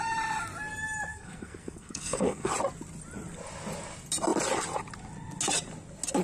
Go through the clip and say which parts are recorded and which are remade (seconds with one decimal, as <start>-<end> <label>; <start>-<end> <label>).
0.0-1.1 recorded; 1.1-2.5 remade; 2.5-6.2 recorded